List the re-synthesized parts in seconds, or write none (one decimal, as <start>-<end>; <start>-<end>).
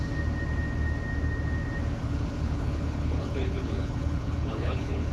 2.0-5.1